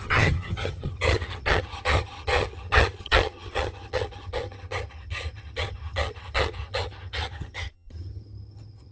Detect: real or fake fake